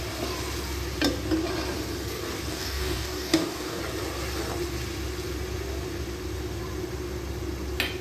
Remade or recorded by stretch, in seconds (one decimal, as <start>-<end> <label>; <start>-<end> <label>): 0.0-2.5 recorded; 2.5-3.8 remade; 3.8-8.0 recorded